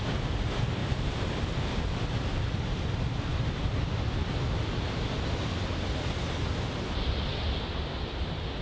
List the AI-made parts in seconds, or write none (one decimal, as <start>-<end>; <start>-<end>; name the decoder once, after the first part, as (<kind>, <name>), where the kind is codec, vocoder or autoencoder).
0.8-1.5 (vocoder, BigVGAN v2); 2.3-2.9